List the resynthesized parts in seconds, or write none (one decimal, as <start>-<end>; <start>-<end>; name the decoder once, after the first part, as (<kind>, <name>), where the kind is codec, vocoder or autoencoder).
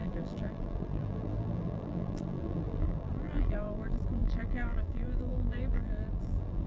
0.0-6.7 (vocoder, BigVGAN v2)